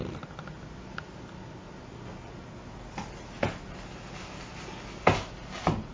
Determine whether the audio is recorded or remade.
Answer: recorded